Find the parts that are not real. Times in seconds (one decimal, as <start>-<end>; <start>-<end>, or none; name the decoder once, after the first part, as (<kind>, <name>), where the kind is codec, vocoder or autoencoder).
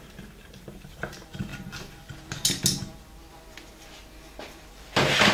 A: 0.0-1.5 (vocoder, BigVGAN v2); 4.7-5.3